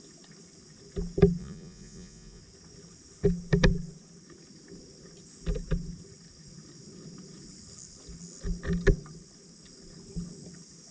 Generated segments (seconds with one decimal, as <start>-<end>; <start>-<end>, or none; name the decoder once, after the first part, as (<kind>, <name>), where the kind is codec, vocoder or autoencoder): 1.4-2.4 (vocoder, Vocos)